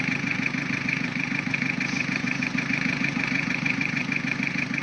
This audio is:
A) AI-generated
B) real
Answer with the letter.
A